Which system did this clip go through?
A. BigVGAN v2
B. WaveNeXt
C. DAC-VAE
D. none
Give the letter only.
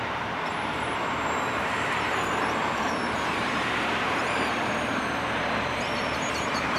A